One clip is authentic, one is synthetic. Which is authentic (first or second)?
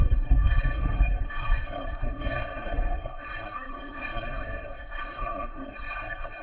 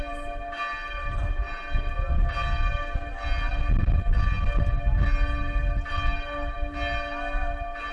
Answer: second